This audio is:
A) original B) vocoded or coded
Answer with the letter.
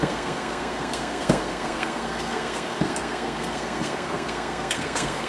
B